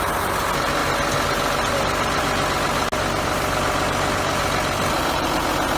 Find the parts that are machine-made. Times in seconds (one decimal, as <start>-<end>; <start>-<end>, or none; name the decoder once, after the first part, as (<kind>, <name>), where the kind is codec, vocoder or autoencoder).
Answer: none